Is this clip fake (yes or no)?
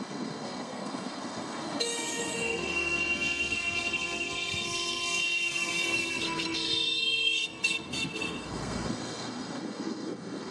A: yes